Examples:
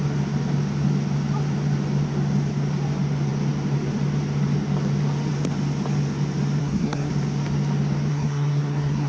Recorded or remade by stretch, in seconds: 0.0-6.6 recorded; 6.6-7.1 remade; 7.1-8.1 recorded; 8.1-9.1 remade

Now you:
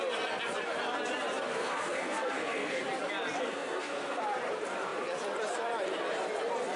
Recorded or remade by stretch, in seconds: 0.0-1.5 recorded; 1.5-2.8 remade; 2.8-3.4 recorded; 3.4-4.2 remade; 4.2-6.8 recorded

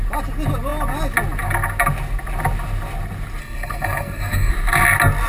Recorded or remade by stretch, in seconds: 0.0-3.4 recorded; 3.4-4.5 remade; 4.5-5.3 recorded

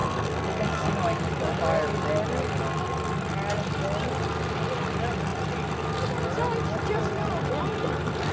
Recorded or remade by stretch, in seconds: 0.0-0.9 remade; 0.9-8.3 recorded

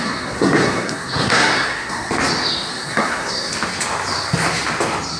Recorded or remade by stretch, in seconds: 0.0-2.1 remade; 2.1-2.7 recorded; 2.7-3.5 remade; 3.5-5.2 recorded

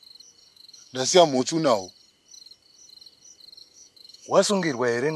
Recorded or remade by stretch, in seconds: 0.0-0.5 recorded; 0.5-1.4 remade; 1.4-3.6 recorded; 3.6-4.5 remade; 4.5-5.2 recorded

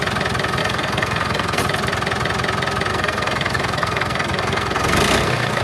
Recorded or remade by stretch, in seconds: 0.0-0.6 recorded; 0.6-1.6 remade; 1.6-2.9 recorded; 2.9-5.6 remade